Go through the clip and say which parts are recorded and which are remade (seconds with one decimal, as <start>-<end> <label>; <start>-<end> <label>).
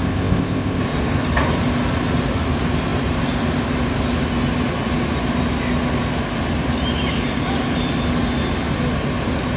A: 0.0-0.8 remade; 0.8-9.6 recorded